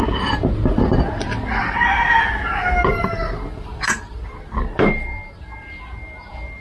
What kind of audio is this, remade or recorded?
recorded